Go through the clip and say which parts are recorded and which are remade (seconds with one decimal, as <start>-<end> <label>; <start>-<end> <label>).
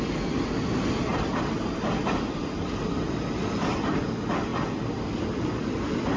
0.0-1.1 recorded; 1.1-2.6 remade; 2.6-6.2 recorded